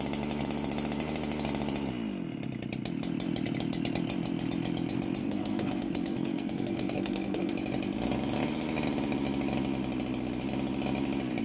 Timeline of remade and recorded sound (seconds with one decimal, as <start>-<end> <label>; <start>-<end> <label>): 0.0-5.2 recorded; 5.2-7.5 remade; 7.5-11.4 recorded